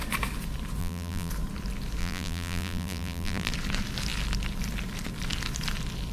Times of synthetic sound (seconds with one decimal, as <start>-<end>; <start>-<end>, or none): 0.8-1.3; 2.0-3.5